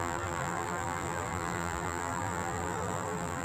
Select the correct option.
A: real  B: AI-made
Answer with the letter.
B